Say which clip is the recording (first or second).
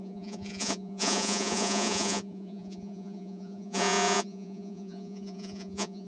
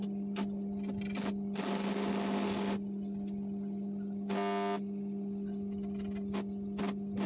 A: second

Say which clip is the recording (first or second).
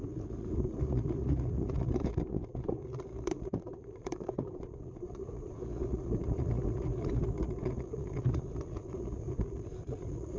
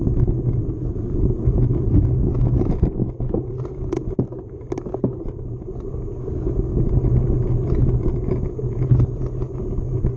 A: second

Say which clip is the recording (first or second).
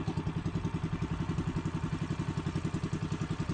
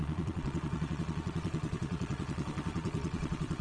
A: first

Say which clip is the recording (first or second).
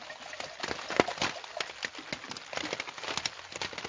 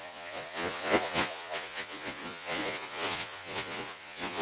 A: first